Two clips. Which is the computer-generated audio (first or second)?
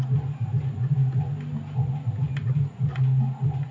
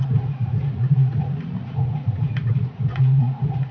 second